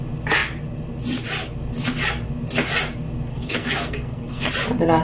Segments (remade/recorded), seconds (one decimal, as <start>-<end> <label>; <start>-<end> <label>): 0.0-3.3 recorded; 3.3-4.5 remade; 4.5-5.0 recorded